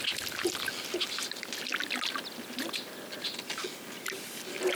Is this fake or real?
real